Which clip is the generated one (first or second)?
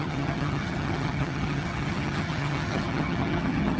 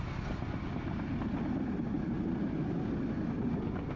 first